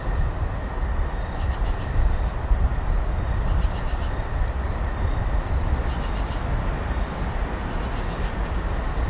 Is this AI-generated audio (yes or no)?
no